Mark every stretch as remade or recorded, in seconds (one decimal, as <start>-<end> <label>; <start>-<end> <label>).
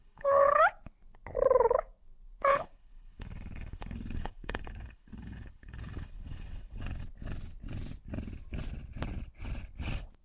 0.0-0.6 remade; 0.6-2.5 recorded; 2.5-7.0 remade; 7.0-10.2 recorded